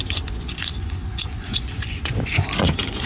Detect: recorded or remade remade